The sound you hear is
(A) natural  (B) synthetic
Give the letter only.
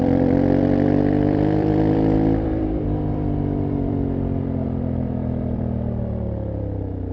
B